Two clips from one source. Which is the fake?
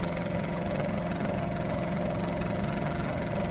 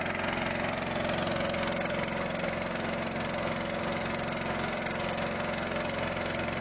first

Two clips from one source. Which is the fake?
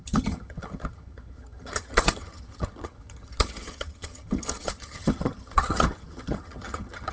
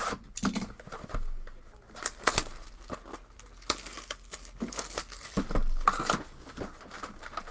first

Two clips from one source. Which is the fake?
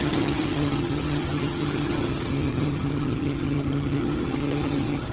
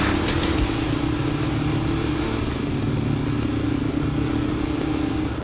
first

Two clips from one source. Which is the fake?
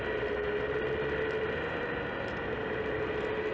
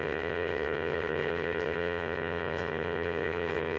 second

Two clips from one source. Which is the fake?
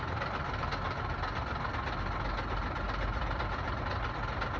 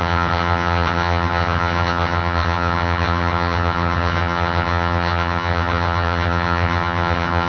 second